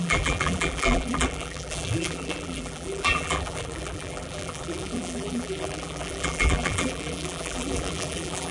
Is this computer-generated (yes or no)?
yes